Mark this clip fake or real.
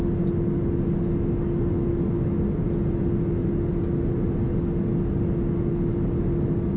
real